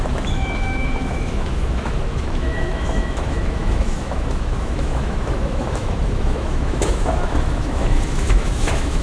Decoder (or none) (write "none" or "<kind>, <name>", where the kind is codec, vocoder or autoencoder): autoencoder, DAC-VAE